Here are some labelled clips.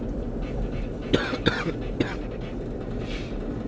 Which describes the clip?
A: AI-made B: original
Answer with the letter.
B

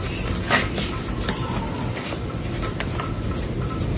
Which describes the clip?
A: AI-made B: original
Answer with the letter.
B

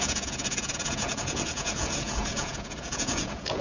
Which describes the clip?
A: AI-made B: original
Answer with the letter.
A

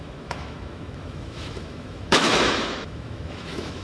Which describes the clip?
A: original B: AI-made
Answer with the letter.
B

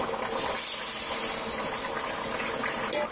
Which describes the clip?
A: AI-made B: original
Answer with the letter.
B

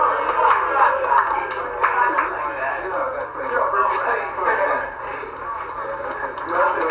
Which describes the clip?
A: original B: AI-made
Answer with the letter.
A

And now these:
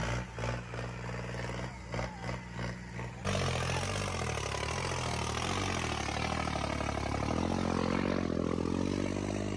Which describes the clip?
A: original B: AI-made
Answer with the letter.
A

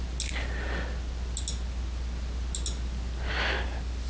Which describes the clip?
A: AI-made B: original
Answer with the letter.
B